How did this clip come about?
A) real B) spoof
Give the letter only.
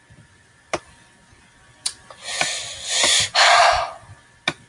A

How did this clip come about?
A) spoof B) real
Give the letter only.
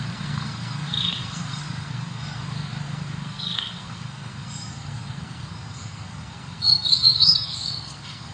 A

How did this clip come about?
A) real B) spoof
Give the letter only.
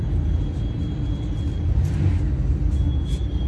A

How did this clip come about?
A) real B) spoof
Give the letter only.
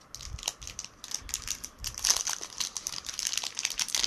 A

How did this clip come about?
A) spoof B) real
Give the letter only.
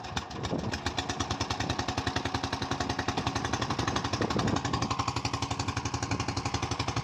B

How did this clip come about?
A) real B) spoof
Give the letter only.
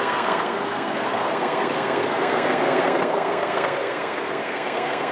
B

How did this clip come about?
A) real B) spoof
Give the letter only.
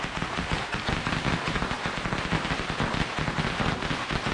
A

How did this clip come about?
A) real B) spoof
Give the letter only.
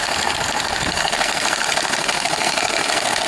B